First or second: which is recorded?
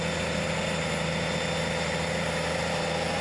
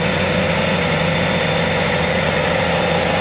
first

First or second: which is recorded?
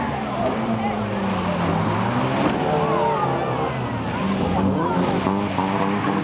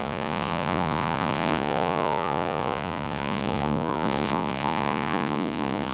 first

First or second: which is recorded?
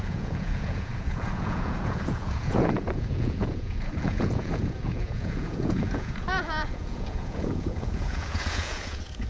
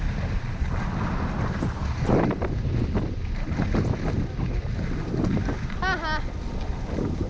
second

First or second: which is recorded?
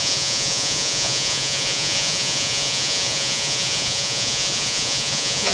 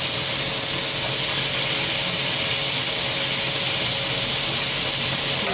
second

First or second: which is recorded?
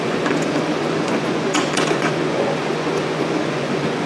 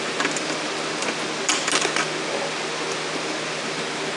second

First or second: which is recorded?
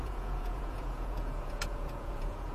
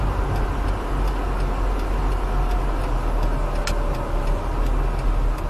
second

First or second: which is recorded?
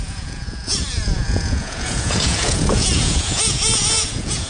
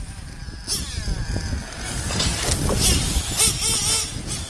second